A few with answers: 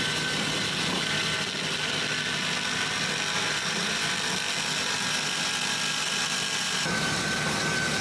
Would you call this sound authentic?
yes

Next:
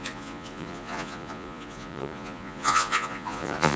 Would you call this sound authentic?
no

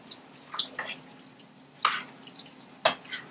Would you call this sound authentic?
yes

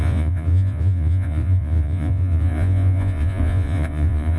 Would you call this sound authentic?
no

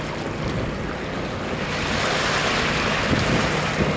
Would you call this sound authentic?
yes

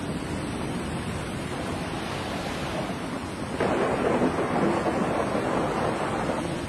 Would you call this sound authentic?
yes